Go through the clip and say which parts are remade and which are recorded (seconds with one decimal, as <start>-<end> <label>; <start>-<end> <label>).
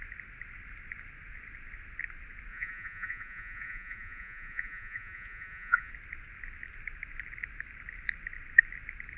0.0-2.5 recorded; 2.5-5.9 remade; 5.9-9.2 recorded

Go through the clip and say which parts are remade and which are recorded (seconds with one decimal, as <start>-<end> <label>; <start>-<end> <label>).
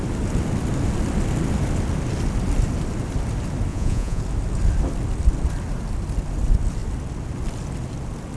0.0-3.7 recorded; 3.7-4.2 remade; 4.2-8.4 recorded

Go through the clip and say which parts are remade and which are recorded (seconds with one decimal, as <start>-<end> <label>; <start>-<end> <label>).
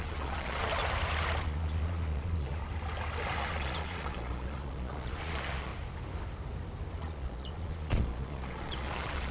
0.0-0.7 remade; 0.7-1.4 recorded; 1.4-2.6 remade; 2.6-3.4 recorded; 3.4-5.7 remade; 5.7-7.0 recorded; 7.0-9.3 remade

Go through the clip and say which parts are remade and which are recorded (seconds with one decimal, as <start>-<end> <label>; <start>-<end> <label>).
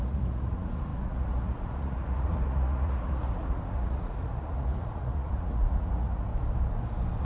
0.0-6.3 remade; 6.3-7.2 recorded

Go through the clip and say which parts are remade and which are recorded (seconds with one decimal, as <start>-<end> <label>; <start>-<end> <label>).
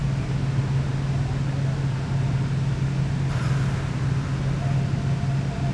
0.0-5.7 recorded